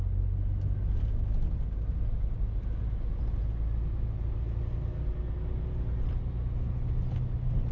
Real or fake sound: real